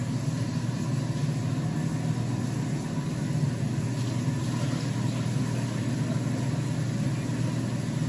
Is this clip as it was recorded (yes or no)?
yes